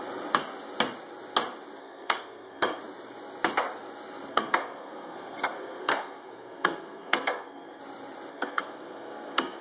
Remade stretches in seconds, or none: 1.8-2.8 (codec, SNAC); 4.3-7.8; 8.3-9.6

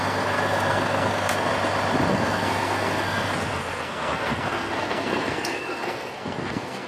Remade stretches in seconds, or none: 0.0-1.5 (codec, SNAC); 2.1-6.9

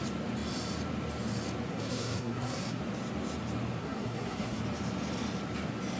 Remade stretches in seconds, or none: 1.7-2.8 (codec, SNAC); 3.8-4.6

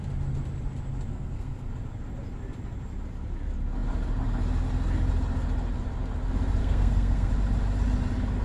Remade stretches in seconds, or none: 1.1-1.7 (codec, SNAC); 6.6-7.3